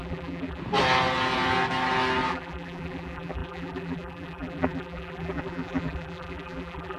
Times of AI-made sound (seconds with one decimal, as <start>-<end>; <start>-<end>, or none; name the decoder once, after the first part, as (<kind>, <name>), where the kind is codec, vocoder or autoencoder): 0.0-0.6 (vocoder, BigVGAN v2); 2.3-7.0

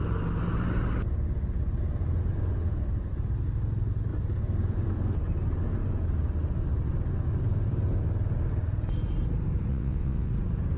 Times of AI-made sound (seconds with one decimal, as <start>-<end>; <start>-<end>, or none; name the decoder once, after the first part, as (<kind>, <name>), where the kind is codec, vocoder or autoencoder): 9.7-10.3 (vocoder, WaveNeXt)